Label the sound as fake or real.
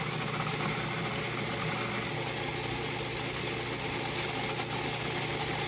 real